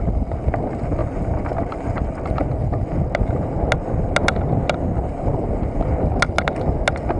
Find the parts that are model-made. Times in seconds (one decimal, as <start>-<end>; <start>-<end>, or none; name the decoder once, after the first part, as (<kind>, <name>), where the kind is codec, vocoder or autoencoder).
none